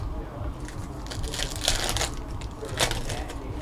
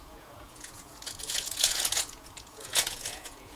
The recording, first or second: first